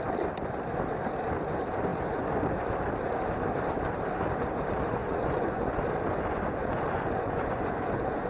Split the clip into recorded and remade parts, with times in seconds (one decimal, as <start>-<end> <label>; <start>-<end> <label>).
0.0-5.0 recorded; 5.0-5.8 remade; 5.8-6.6 recorded; 6.6-8.3 remade